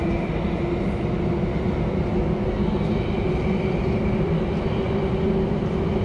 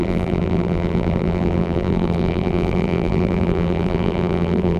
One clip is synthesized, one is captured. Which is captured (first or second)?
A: first